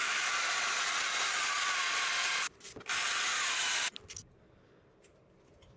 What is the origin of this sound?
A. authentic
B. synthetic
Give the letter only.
A